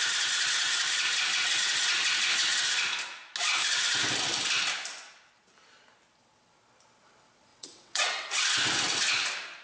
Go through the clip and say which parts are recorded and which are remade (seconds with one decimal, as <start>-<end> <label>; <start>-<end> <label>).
0.0-7.5 recorded; 7.5-8.4 remade; 8.4-9.6 recorded